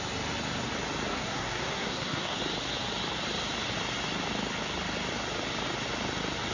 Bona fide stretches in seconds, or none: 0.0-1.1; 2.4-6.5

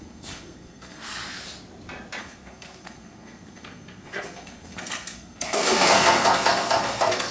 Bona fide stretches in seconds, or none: 1.2-2.2

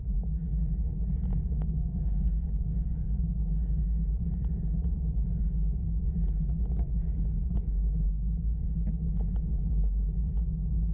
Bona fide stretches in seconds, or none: 0.0-1.3; 3.2-10.9

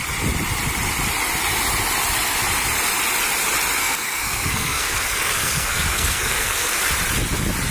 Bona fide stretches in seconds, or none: 0.0-3.8; 6.9-7.7

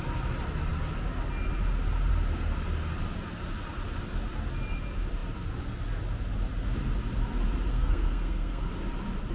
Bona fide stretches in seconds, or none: 0.0-7.7; 8.7-9.3

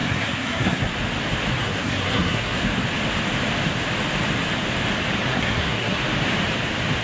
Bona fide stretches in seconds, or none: 0.9-1.6; 2.6-5.3; 6.0-7.0